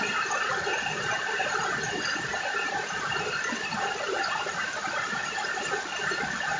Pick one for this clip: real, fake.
real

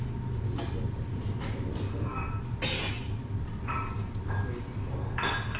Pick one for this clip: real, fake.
real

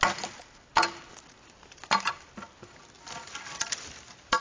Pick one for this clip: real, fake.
real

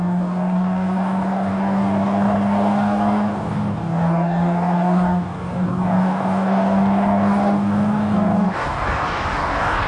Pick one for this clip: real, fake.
fake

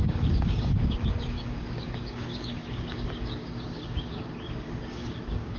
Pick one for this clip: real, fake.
fake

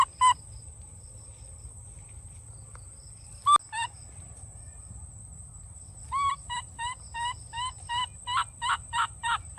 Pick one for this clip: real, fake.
real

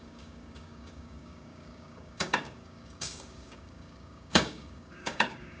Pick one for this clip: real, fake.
fake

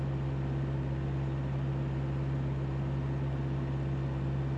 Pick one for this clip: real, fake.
real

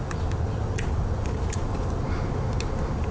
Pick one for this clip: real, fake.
real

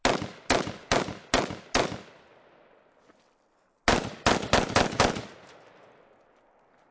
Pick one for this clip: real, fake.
real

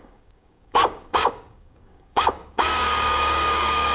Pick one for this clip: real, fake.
fake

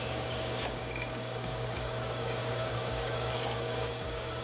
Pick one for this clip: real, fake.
fake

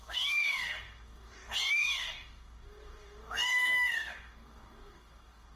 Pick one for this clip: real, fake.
fake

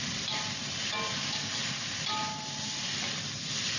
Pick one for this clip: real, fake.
real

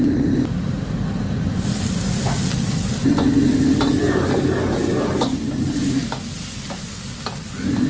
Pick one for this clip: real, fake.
real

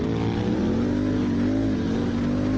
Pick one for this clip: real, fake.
real